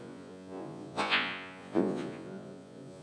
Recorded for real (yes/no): no